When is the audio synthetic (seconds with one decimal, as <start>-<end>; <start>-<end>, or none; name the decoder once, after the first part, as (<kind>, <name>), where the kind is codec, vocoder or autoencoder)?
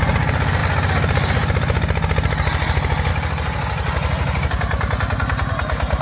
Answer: none